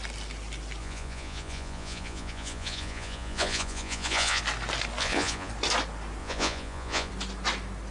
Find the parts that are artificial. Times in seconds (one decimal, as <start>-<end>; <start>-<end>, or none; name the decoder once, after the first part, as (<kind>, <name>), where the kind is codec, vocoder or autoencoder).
0.8-4.4 (vocoder, Vocos); 5.0-5.5; 6.2-7.1